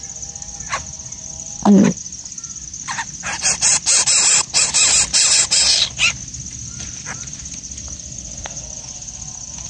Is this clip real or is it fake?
real